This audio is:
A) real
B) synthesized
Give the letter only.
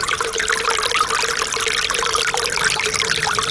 A